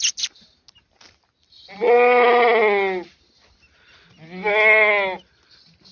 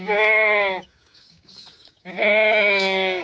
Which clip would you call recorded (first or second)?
first